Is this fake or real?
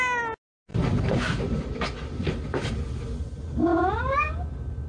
real